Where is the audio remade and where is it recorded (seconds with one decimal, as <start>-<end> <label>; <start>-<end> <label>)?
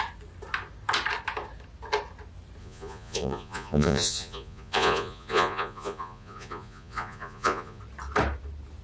0.0-2.6 recorded; 2.6-7.8 remade; 7.8-8.8 recorded